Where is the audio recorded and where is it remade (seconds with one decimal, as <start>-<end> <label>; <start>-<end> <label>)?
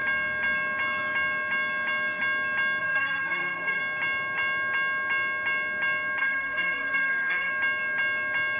0.0-2.8 recorded; 2.8-3.8 remade; 3.8-6.2 recorded; 6.2-7.5 remade; 7.5-8.6 recorded